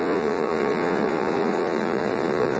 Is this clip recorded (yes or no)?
no